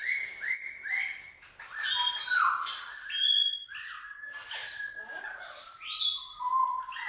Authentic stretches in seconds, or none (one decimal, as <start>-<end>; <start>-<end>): 0.0-7.1

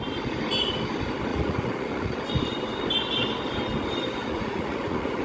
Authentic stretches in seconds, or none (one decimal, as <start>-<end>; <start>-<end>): 0.0-1.3; 2.2-4.2

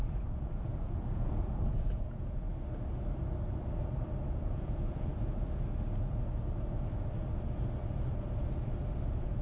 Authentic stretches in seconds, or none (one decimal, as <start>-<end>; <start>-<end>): 2.5-4.2; 5.1-9.0